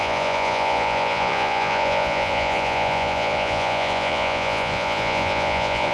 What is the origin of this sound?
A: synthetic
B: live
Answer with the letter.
A